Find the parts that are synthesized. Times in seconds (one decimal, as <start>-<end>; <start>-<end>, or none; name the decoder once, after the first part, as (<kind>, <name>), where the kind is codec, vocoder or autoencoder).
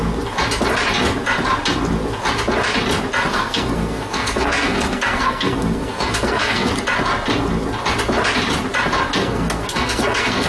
3.3-6.7 (codec, SNAC); 9.2-10.5